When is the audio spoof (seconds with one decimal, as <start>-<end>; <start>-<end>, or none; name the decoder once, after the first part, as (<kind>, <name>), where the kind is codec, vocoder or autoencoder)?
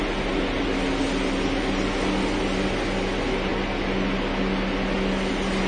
none